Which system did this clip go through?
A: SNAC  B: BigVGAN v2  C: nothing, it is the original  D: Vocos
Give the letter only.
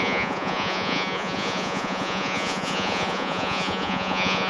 D